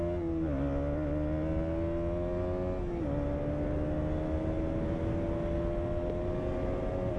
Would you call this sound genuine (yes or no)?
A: yes